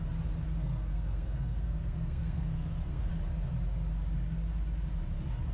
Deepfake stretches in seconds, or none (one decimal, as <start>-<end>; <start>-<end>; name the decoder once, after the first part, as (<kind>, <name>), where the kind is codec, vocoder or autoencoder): 0.6-3.1 (codec, SNAC)